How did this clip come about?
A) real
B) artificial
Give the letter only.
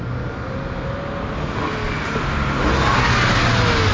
A